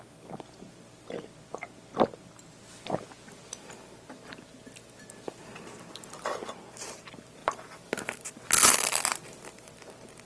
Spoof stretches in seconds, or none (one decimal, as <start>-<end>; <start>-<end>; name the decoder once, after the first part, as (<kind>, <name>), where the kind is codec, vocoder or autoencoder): 7.4-9.7 (vocoder, BigVGAN v2)